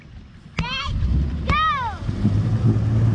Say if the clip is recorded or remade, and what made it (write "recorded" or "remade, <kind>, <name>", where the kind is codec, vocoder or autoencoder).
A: recorded